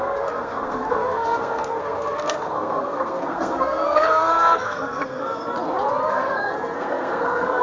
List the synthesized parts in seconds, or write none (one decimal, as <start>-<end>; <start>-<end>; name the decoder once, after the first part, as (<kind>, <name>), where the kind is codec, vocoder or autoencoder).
0.0-5.4 (codec, SNAC); 6.1-7.6